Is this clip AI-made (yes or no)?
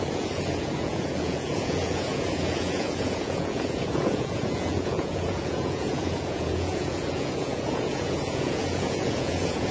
yes